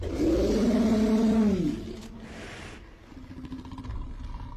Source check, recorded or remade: recorded